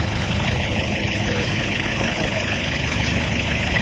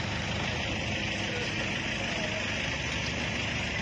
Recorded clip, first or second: second